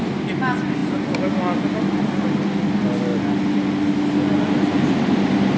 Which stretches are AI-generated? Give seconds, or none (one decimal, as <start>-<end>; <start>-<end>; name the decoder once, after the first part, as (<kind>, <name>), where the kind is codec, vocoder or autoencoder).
none